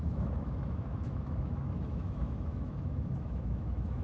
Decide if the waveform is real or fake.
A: fake